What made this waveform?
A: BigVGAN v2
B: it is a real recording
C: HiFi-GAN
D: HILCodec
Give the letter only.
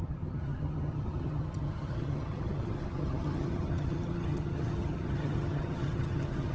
C